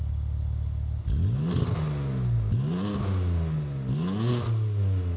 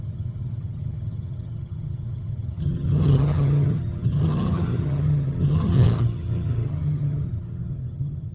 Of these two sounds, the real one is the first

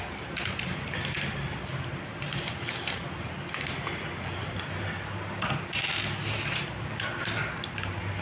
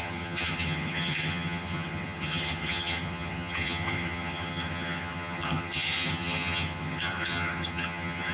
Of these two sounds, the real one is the first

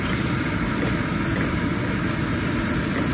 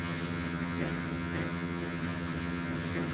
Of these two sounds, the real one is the first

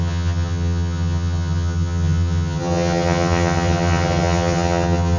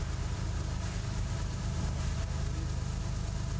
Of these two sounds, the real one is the second